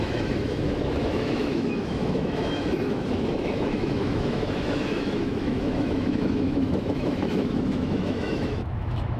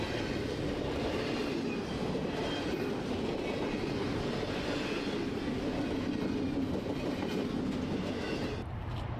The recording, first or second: second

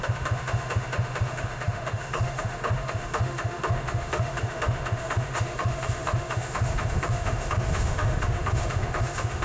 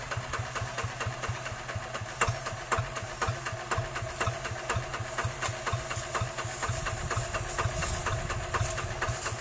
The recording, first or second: second